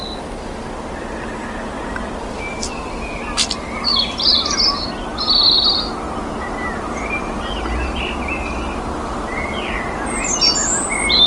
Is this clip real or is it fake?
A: real